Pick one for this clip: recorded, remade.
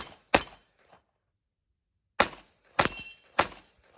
recorded